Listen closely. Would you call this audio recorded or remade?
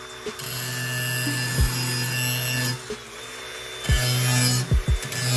recorded